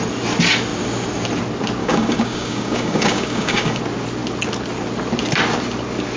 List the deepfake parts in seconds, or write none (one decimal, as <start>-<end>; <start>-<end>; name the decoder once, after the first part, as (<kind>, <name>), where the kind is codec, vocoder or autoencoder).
1.8-3.8 (codec, DAC)